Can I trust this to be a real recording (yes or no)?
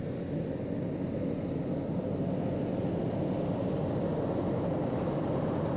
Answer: yes